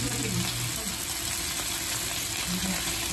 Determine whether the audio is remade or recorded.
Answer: recorded